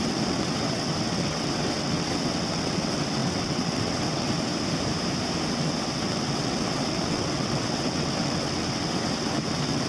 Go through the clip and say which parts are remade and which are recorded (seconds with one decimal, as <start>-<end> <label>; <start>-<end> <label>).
0.0-4.5 remade; 4.5-5.5 recorded; 5.5-9.9 remade